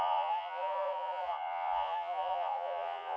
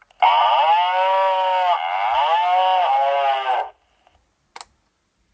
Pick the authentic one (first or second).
second